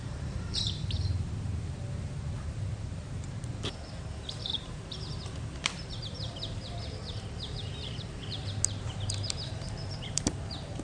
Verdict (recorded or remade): remade